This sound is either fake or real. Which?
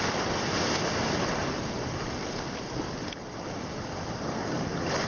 real